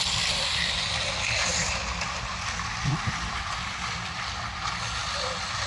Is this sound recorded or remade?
recorded